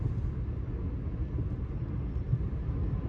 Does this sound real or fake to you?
real